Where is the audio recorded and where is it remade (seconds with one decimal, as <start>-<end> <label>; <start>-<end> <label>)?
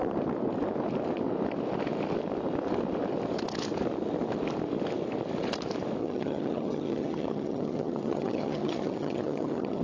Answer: 0.0-6.0 recorded; 6.0-9.8 remade